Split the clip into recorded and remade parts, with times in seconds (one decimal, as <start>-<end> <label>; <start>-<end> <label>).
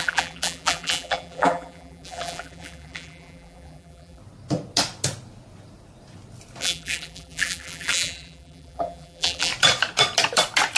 0.0-4.2 remade; 4.2-6.6 recorded; 6.6-9.5 remade; 9.5-10.8 recorded